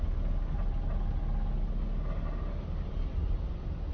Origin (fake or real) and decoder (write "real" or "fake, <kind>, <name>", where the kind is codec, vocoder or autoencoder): real